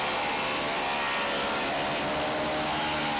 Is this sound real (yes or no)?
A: yes